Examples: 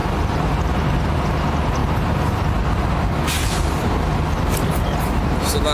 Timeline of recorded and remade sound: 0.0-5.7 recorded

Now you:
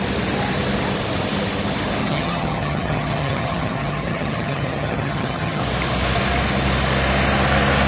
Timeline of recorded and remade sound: 0.0-2.0 recorded; 2.0-5.6 remade; 5.6-7.9 recorded

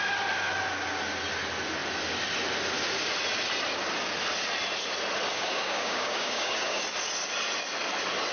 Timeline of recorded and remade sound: 0.0-5.3 recorded; 5.3-6.8 remade; 6.8-8.3 recorded

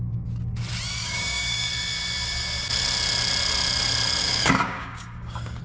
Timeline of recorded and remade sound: 0.0-1.0 recorded; 1.0-1.7 remade; 1.7-4.2 recorded; 4.2-5.6 remade

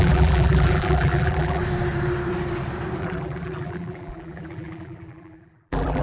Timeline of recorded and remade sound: 0.0-1.6 remade; 1.6-3.0 recorded; 3.0-6.0 remade

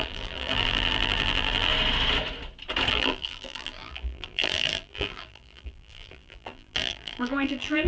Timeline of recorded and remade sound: 0.0-1.7 remade; 1.7-2.9 recorded; 2.9-7.9 remade

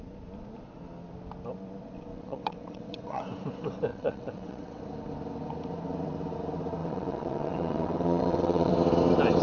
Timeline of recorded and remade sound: 0.0-2.1 recorded; 2.1-3.2 remade; 3.2-3.9 recorded; 3.9-4.8 remade; 4.8-6.8 recorded; 6.8-8.7 remade; 8.7-9.4 recorded

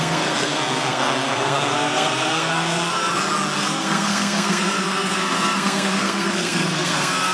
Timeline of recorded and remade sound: 0.0-3.0 remade; 3.0-3.6 recorded; 3.6-7.3 remade